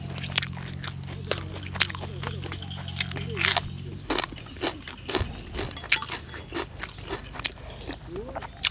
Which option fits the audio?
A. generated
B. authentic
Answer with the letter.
B